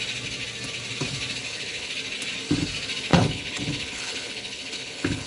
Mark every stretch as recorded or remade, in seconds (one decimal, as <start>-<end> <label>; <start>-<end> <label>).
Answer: 0.0-1.4 recorded; 1.4-1.9 remade; 1.9-3.1 recorded; 3.1-5.3 remade